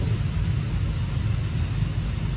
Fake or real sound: real